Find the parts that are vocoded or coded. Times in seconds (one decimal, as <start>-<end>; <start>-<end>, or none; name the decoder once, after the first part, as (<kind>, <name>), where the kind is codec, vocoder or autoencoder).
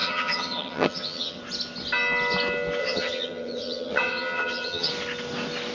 0.0-1.4 (vocoder, HiFi-GAN); 2.8-4.9